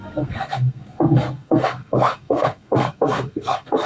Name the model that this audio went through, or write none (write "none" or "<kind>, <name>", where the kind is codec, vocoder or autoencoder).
codec, SNAC